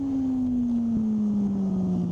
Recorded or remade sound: recorded